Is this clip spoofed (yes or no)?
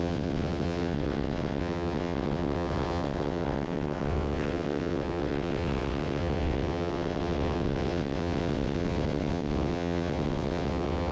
yes